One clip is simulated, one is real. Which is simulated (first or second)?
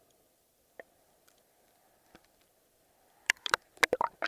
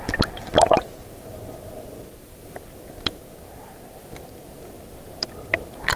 first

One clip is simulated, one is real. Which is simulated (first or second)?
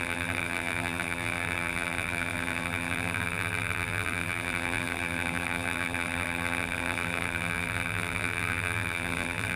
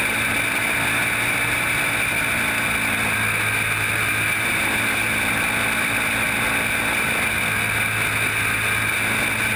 first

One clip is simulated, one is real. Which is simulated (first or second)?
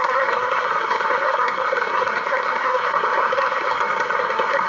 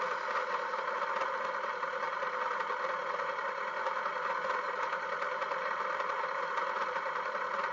first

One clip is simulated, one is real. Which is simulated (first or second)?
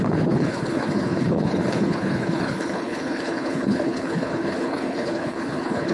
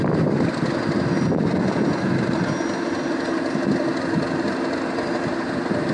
first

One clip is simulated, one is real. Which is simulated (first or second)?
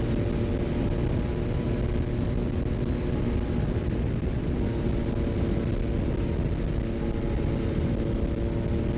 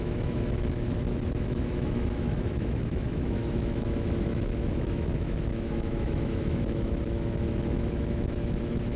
second